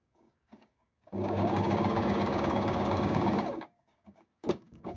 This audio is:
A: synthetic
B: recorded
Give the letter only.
A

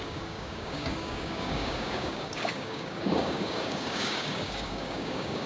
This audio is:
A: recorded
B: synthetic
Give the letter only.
B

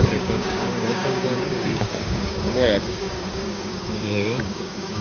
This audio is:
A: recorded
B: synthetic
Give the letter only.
B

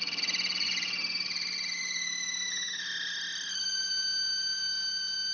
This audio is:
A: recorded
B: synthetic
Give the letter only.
A